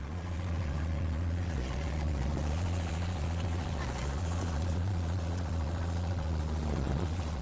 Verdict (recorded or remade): remade